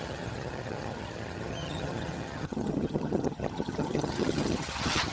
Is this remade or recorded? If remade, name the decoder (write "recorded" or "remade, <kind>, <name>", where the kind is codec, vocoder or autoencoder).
remade, vocoder, HiFi-GAN